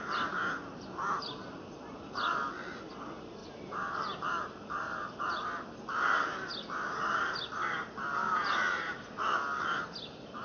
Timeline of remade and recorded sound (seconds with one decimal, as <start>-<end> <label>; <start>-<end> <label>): 0.0-3.4 recorded; 3.4-5.3 remade; 5.3-10.4 recorded